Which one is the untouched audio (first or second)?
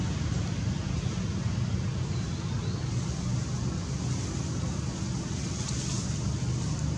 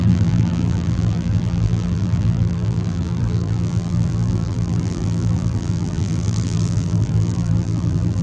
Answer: first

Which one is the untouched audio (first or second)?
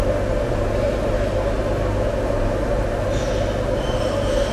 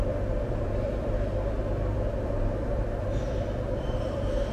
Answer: first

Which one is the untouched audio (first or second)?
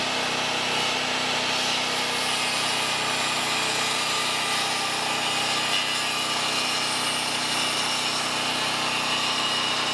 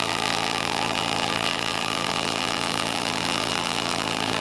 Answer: first